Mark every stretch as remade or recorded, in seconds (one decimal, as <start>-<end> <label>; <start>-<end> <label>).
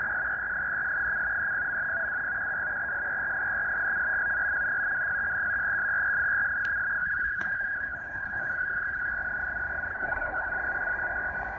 0.0-7.0 recorded; 7.0-9.1 remade; 9.1-9.9 recorded; 9.9-10.5 remade; 10.5-11.6 recorded